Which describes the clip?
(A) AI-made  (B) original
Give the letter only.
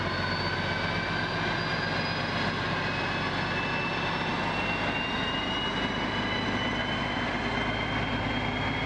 B